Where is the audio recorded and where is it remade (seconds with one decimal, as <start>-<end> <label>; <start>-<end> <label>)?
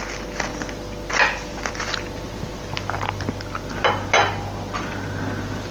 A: 0.0-5.7 recorded